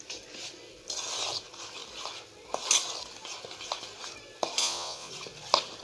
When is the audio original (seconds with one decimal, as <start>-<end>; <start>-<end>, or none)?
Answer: 0.0-4.6; 5.1-5.8